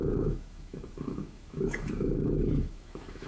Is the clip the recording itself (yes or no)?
no